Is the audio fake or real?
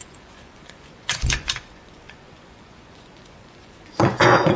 fake